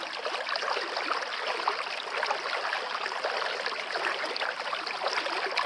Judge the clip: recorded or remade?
recorded